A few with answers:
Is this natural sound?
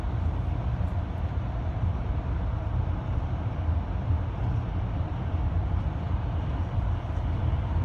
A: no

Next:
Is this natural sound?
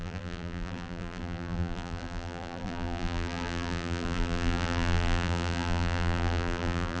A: no